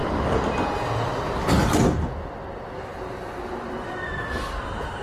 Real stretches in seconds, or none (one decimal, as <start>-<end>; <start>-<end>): 0.0-5.0